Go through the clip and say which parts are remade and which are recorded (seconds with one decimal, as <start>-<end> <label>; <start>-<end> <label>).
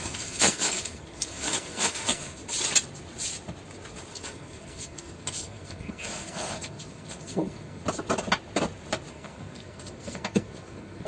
0.0-2.4 remade; 2.4-4.1 recorded; 4.1-7.8 remade; 7.8-9.1 recorded; 9.1-11.1 remade